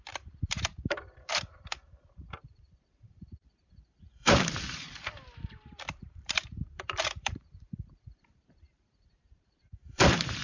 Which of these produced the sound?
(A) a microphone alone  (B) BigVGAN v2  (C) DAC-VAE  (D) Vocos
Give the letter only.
B